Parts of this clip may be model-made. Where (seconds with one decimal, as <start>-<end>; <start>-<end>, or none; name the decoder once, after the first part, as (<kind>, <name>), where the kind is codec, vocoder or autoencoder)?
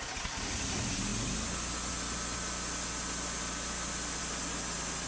none